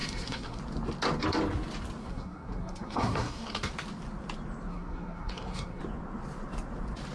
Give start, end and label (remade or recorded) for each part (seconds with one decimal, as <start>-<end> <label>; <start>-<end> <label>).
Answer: 0.0-0.6 remade; 0.6-2.0 recorded; 2.0-3.7 remade; 3.7-4.7 recorded; 4.7-5.8 remade; 5.8-7.1 recorded